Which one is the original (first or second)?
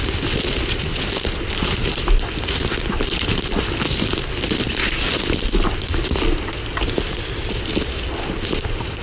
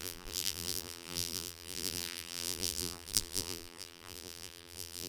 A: first